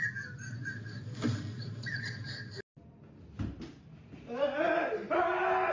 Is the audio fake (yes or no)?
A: no